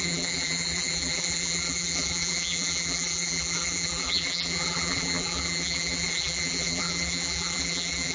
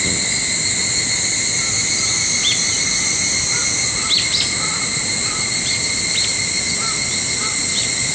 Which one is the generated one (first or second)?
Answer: first